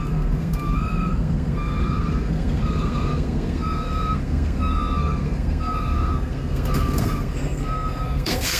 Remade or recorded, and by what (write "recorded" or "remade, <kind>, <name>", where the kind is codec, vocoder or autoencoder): remade, codec, SNAC